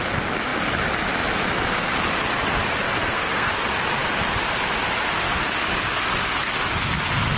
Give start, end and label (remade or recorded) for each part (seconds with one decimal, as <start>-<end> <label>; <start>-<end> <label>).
0.0-3.0 recorded; 3.0-3.5 remade; 3.5-7.4 recorded